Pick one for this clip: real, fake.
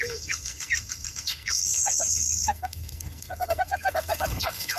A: fake